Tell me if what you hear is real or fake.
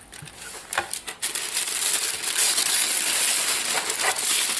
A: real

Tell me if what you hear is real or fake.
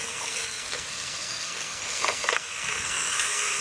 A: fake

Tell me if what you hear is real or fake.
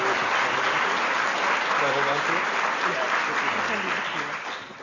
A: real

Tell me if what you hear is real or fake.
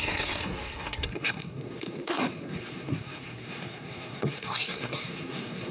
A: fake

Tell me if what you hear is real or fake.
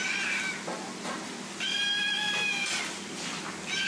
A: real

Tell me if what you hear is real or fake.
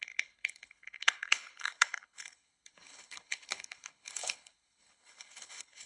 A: fake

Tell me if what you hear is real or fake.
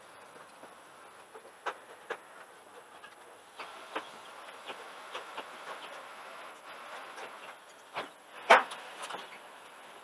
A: real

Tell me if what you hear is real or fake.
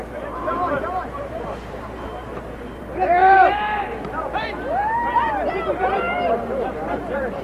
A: fake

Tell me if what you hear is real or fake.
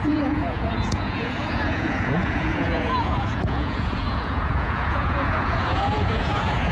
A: fake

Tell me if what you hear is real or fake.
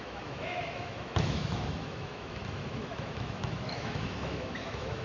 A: fake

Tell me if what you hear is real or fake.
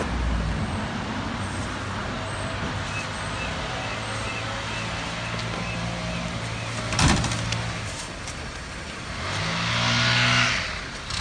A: real